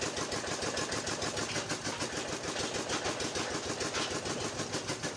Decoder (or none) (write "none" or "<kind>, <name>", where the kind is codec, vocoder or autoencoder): none